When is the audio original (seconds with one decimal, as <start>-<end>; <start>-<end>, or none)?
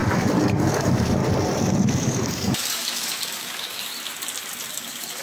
1.2-1.9; 3.9-4.7